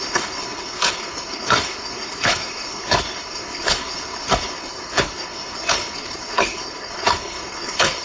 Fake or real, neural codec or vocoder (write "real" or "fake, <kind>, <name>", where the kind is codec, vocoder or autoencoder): fake, codec, HILCodec